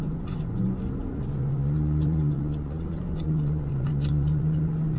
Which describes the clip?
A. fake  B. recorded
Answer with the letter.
A